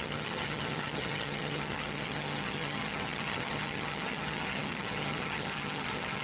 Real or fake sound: fake